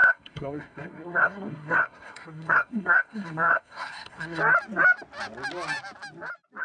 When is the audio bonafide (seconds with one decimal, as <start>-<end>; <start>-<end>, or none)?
4.4-6.6

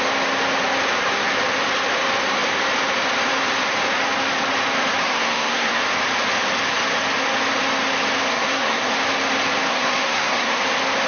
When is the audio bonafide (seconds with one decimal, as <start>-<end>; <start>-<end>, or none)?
0.0-5.0; 5.8-8.3; 8.9-9.7; 10.6-11.1

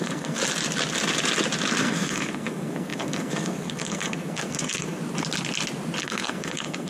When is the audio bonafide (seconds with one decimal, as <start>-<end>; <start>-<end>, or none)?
0.4-1.8; 5.0-6.0

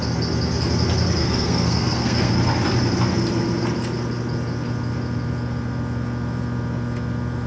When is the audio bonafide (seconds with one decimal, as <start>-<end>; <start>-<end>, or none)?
0.0-1.2; 2.3-7.5

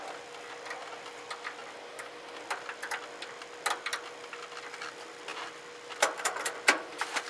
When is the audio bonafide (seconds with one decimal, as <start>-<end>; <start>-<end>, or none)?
0.0-7.3

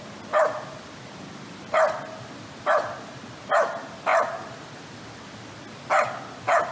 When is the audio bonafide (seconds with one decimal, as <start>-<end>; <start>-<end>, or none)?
0.0-6.7

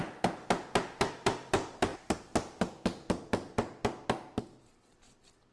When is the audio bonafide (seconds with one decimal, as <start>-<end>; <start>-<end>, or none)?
0.0-5.5